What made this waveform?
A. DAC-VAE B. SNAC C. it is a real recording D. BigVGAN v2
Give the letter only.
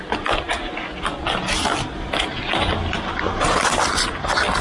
C